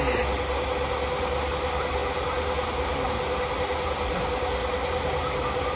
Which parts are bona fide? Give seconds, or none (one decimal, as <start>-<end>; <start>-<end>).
0.0-5.8